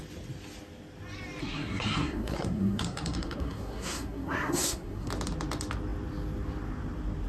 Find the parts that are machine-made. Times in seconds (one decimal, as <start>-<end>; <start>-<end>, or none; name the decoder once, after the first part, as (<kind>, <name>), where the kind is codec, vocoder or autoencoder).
1.4-5.1 (codec, SNAC)

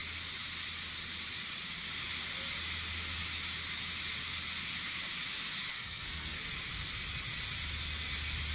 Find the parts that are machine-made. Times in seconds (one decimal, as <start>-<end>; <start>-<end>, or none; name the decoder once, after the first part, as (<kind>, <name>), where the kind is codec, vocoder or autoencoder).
5.7-6.4 (codec, SNAC)

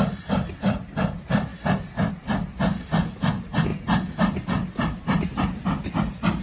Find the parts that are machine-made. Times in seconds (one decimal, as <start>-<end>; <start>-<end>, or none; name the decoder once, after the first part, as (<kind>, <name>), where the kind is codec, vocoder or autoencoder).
none

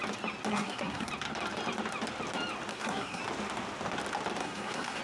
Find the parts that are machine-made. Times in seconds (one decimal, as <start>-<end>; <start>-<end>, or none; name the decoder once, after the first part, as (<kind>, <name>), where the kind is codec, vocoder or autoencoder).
0.5-1.1 (codec, SNAC); 2.7-3.2; 4.4-5.0

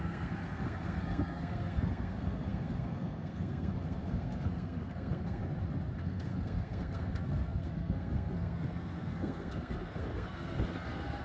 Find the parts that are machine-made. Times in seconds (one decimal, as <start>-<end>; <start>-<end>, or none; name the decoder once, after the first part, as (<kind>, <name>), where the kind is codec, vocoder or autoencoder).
0.0-5.4 (codec, SNAC); 6.0-11.2

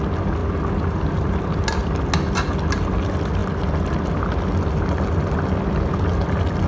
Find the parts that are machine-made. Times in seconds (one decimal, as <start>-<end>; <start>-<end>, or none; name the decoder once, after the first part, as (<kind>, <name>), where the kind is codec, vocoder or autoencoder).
none